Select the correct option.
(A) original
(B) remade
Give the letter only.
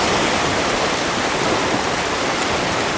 A